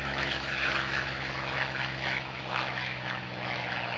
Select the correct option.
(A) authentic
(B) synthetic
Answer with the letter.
B